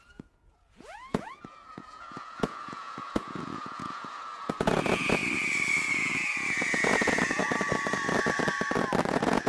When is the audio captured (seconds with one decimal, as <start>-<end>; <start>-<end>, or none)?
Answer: 5.2-5.9; 7.4-9.1